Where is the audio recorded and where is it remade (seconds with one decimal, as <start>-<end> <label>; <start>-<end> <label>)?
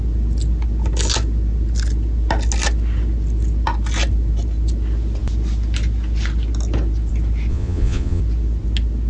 0.0-7.5 recorded; 7.5-8.2 remade; 8.2-9.1 recorded